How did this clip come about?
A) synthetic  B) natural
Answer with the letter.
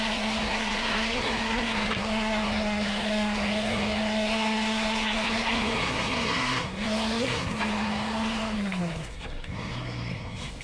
A